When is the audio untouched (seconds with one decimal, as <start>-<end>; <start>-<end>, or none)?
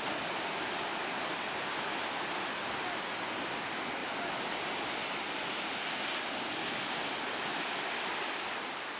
0.0-0.9; 3.5-7.5